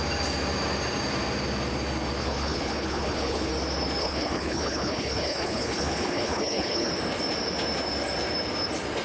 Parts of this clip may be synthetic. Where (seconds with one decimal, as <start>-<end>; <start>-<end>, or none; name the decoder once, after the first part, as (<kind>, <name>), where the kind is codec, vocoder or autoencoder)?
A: 2.2-3.5 (codec, HILCodec); 4.0-6.9